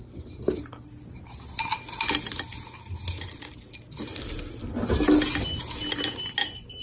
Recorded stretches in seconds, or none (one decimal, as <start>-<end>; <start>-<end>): 0.0-6.8